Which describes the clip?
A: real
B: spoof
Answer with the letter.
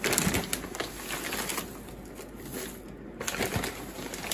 A